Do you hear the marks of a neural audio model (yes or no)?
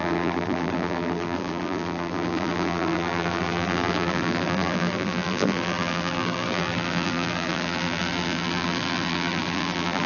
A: yes